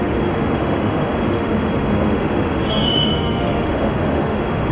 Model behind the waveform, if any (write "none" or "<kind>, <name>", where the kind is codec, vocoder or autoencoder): autoencoder, DAC-VAE